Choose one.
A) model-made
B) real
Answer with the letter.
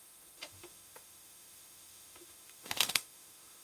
A